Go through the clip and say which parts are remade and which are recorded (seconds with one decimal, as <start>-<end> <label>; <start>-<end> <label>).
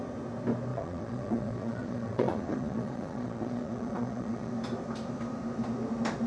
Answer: 0.0-0.7 recorded; 0.7-4.5 remade; 4.5-6.3 recorded